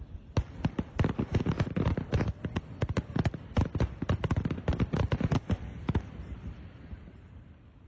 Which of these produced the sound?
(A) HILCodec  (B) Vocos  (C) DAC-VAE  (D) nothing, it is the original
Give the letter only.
D